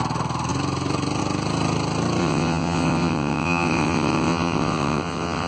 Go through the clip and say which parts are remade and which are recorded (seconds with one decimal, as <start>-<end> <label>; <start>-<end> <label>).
0.0-2.2 recorded; 2.2-5.5 remade